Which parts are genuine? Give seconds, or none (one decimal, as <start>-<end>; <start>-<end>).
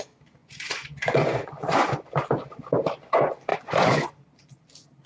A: 0.0-0.4; 2.0-3.5; 4.1-5.1